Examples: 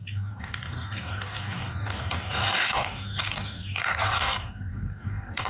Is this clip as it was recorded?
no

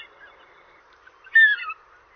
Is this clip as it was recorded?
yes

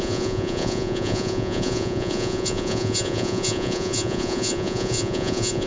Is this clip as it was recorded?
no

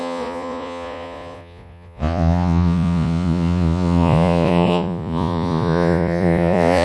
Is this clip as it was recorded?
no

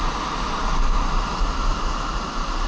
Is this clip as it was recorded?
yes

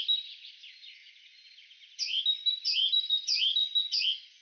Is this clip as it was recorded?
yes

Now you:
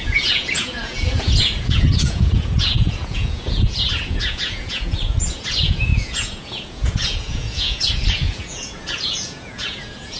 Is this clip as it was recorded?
no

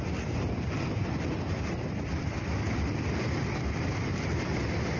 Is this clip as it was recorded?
no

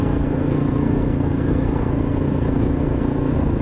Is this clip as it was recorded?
no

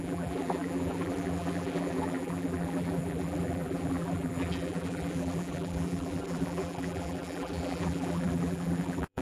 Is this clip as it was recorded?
no